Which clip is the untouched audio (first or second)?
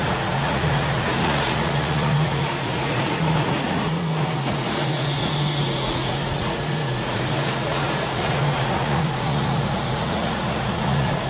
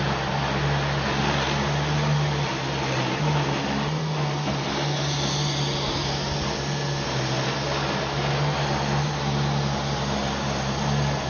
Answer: second